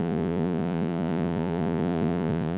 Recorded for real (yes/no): no